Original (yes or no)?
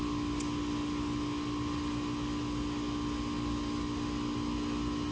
yes